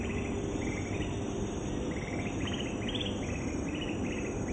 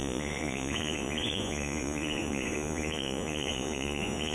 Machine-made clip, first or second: second